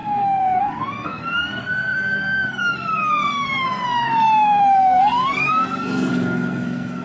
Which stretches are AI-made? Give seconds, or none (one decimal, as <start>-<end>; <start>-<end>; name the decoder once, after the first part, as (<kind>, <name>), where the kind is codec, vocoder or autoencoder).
0.0-7.0 (codec, SNAC)